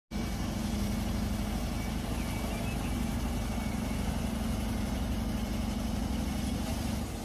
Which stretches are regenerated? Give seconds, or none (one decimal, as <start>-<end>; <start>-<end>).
none